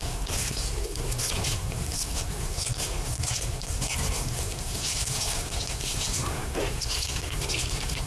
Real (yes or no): no